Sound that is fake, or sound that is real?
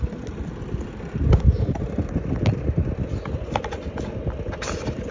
real